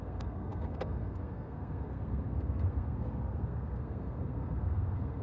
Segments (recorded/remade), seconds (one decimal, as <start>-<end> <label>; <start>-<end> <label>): 0.0-5.2 remade